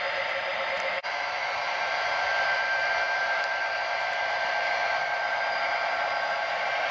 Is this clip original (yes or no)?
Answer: no